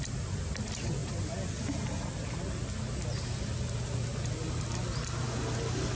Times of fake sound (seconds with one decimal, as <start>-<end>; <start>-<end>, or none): none